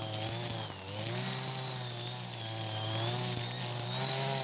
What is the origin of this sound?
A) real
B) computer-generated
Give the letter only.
A